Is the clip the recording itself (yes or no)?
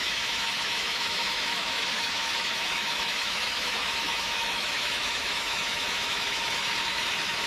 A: no